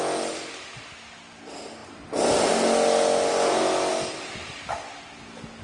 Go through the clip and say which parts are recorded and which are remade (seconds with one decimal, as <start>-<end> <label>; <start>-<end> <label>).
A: 0.0-5.6 recorded